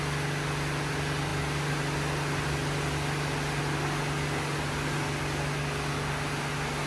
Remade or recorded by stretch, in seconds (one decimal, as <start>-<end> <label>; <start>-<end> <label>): 0.0-6.9 recorded